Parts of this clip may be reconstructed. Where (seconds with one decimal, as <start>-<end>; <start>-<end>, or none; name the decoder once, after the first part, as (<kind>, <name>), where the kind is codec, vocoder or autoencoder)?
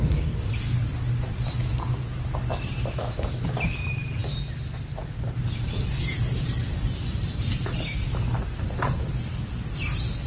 none